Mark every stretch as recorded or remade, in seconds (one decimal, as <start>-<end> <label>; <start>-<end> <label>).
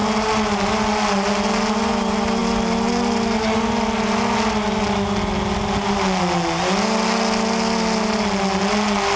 0.0-9.2 recorded